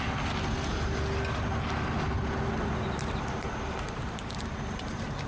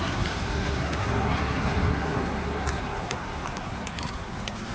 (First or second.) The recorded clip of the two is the first